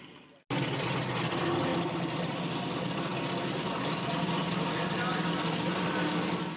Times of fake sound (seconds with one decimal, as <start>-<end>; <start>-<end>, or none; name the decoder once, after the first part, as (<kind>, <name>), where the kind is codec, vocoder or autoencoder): none